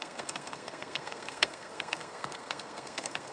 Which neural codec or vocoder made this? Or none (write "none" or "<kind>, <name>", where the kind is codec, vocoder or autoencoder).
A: codec, SNAC